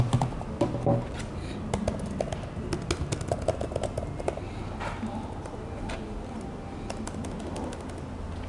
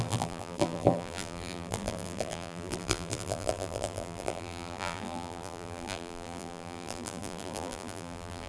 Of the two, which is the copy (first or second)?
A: second